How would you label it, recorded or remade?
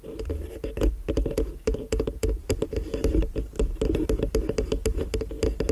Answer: recorded